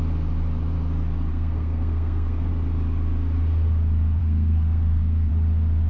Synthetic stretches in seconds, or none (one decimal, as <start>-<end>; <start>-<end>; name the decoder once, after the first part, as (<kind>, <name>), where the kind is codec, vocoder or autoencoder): 1.3-2.5 (codec, SNAC); 4.2-5.3